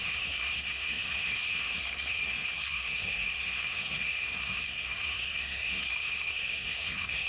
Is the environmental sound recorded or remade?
remade